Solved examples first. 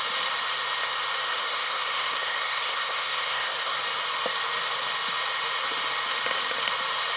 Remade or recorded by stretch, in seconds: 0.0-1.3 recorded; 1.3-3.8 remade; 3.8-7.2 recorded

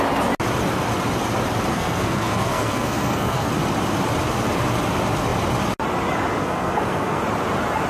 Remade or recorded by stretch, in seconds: 0.0-1.7 recorded; 1.7-3.5 remade; 3.5-6.4 recorded; 6.4-7.2 remade; 7.2-7.9 recorded

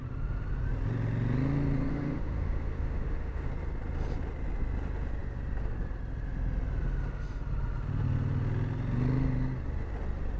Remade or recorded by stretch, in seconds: 0.0-1.9 recorded; 1.9-3.5 remade; 3.5-10.4 recorded

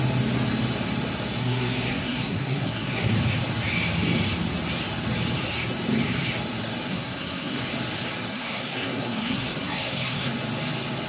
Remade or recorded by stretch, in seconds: 0.0-1.4 recorded; 1.4-3.1 remade; 3.1-6.9 recorded; 6.9-7.6 remade; 7.6-8.3 recorded; 8.3-10.3 remade; 10.3-11.1 recorded

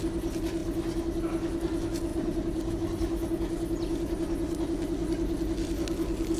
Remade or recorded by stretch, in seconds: 0.0-2.1 recorded; 2.1-2.7 remade; 2.7-6.4 recorded